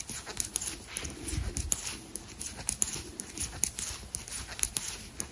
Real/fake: real